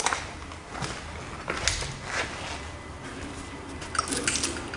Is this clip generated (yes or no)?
no